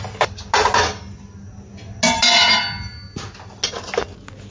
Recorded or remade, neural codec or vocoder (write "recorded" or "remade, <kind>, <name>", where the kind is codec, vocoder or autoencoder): recorded